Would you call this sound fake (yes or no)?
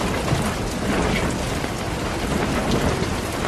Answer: no